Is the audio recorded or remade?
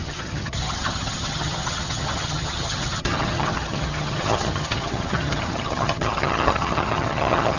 remade